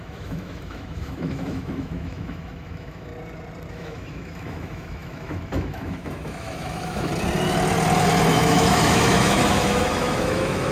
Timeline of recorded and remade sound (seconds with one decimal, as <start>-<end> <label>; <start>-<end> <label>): 0.0-3.1 remade; 3.1-3.7 recorded; 3.7-7.1 remade; 7.1-8.3 recorded; 8.3-10.7 remade